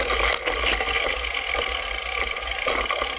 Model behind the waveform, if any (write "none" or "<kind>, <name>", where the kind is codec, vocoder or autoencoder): none